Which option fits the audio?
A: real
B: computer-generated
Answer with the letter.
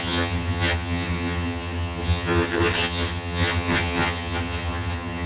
B